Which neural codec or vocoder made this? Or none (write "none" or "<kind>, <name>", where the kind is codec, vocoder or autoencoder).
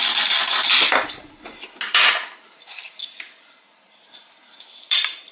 none